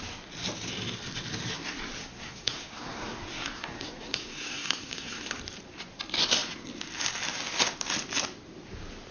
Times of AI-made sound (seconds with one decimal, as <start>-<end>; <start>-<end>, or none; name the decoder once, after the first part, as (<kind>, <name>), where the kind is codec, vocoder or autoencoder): 2.0-5.4 (codec, SNAC)